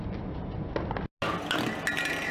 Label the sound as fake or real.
real